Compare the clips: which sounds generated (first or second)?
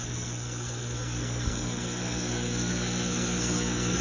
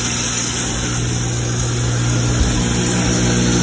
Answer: first